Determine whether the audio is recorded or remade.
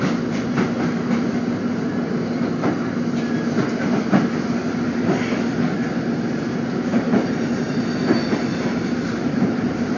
recorded